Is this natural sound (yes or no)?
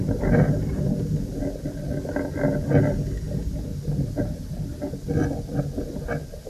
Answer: yes